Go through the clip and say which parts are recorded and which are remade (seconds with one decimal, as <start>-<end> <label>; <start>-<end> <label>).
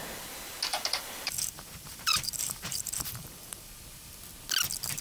0.0-0.7 recorded; 0.7-3.7 remade; 3.7-5.0 recorded